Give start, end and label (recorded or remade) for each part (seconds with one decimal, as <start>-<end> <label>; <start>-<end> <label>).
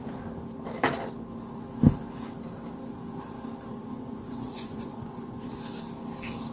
0.0-3.7 recorded; 3.7-5.5 remade; 5.5-6.5 recorded